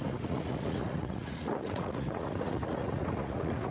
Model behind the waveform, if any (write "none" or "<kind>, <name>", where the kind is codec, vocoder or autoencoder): vocoder, Vocos